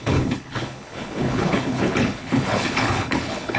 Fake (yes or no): yes